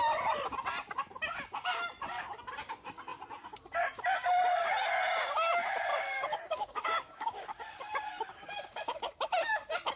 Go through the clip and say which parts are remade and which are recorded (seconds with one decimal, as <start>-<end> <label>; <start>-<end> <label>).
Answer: 0.0-5.9 recorded; 5.9-9.0 remade; 9.0-10.0 recorded